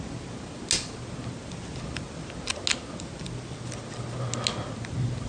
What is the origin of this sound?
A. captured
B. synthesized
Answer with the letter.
A